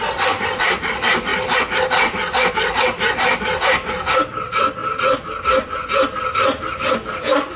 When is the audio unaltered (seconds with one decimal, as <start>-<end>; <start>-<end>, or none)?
0.0-7.6